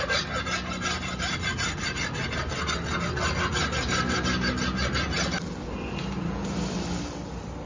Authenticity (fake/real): real